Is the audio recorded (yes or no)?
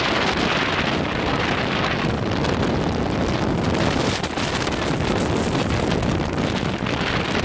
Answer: yes